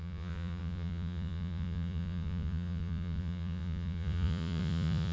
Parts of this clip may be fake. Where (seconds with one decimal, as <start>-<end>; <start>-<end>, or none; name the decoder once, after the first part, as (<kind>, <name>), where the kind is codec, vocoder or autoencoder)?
0.0-5.1 (vocoder, Vocos)